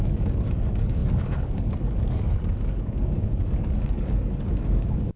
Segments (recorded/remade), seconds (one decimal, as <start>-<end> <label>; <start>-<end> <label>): 0.0-5.2 remade